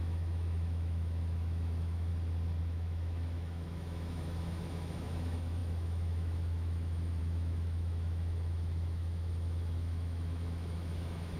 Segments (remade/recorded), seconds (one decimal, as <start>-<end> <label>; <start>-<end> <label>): 0.0-2.1 remade; 2.1-2.6 recorded; 2.6-11.4 remade